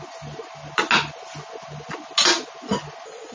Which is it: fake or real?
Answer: real